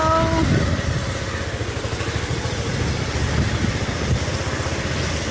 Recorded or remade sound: recorded